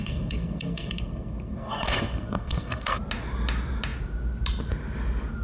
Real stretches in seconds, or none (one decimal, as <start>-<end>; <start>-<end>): 3.0-5.4